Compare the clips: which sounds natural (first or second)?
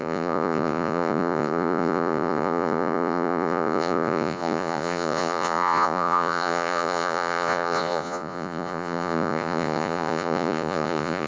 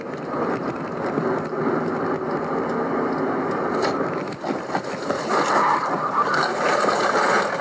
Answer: second